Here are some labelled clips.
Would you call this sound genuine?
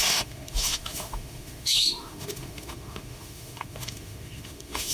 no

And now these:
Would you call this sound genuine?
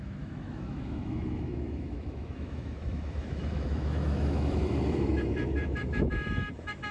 no